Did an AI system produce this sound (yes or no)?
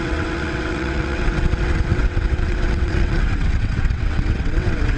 yes